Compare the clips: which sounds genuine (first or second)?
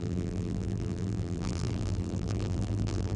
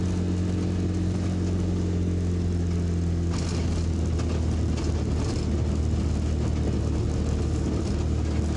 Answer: second